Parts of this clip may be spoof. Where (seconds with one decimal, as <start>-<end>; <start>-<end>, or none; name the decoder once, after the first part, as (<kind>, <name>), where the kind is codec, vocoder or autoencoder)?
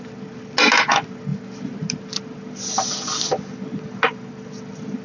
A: none